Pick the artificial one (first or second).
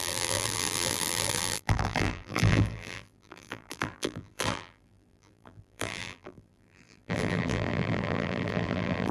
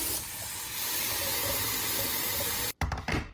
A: first